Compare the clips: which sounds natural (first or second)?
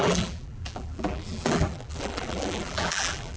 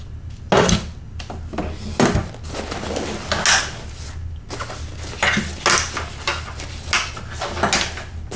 second